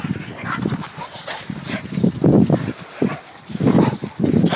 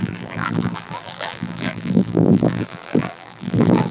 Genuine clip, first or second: first